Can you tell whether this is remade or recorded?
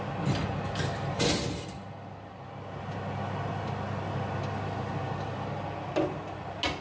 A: recorded